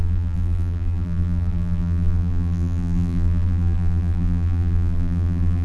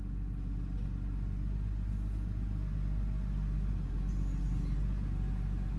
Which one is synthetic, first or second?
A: first